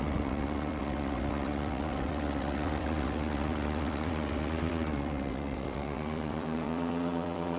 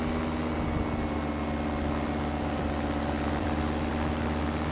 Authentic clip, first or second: second